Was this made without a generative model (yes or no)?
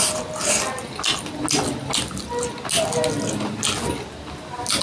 yes